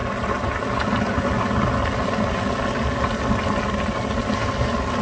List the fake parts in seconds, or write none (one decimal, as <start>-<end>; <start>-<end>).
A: none